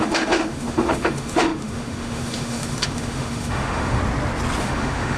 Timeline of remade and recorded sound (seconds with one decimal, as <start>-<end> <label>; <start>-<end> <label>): 0.0-4.0 remade; 4.0-4.6 recorded; 4.6-5.2 remade